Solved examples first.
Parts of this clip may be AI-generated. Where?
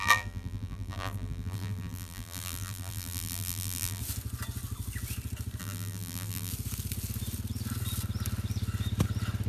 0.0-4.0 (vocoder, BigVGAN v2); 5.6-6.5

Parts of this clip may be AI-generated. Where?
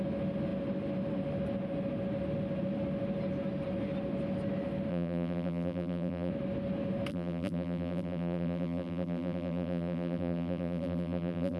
4.9-6.3 (vocoder, BigVGAN v2); 7.1-11.6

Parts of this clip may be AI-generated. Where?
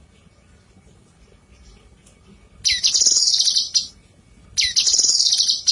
none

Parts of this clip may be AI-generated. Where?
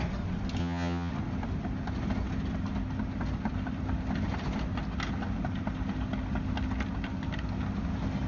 0.6-1.1 (vocoder, HiFi-GAN)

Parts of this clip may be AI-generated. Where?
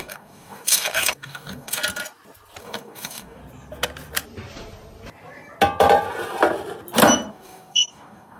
0.0-1.8 (codec, DAC); 2.6-3.4; 7.3-8.4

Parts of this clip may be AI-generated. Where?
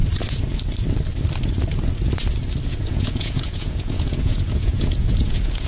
2.7-5.7 (vocoder, Vocos)